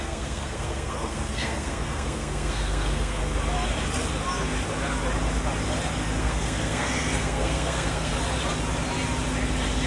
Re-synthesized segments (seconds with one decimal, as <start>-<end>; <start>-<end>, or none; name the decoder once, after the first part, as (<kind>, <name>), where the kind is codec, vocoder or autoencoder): 0.0-3.2 (codec, SNAC); 6.2-8.1

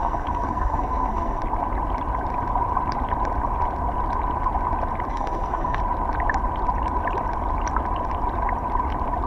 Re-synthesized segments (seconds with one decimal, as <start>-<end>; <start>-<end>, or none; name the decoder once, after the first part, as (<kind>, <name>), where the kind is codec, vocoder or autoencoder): 0.0-1.4 (codec, SNAC); 5.1-5.8

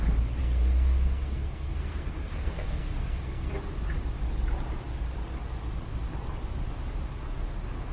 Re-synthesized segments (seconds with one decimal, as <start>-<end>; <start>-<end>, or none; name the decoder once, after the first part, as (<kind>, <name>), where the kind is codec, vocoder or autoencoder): 0.4-3.5 (codec, SNAC)

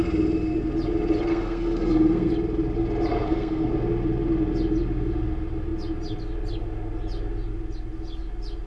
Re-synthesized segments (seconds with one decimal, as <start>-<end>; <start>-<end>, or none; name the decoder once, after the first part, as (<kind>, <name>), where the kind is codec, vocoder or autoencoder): 1.3-2.3 (codec, SNAC); 3.1-3.7

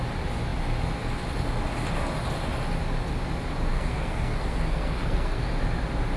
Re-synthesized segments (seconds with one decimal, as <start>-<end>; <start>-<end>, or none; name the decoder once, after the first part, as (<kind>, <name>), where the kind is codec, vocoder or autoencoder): 3.7-5.4 (codec, SNAC)

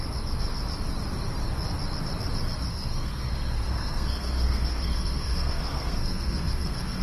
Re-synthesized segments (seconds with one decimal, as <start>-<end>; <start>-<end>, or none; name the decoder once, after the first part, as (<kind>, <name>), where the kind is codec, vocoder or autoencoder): 2.7-7.0 (codec, SNAC)

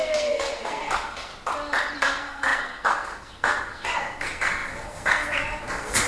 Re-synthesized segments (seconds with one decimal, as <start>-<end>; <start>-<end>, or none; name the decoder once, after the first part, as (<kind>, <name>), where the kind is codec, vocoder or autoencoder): 0.0-1.3 (codec, SNAC); 2.0-6.1

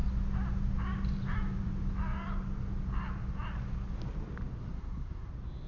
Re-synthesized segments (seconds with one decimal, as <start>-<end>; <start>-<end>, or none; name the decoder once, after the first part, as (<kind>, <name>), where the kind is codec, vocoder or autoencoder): 4.6-5.3 (codec, SNAC)